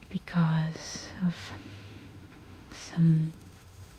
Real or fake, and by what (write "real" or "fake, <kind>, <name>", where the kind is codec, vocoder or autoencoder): fake, autoencoder, DAC-VAE